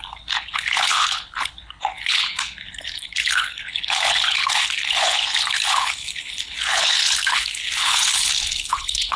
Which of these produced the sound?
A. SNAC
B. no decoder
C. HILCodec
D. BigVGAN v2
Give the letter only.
C